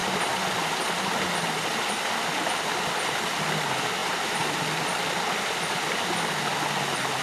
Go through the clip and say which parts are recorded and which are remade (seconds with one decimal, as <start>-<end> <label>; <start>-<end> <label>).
0.0-4.0 recorded; 4.0-4.6 remade; 4.6-7.2 recorded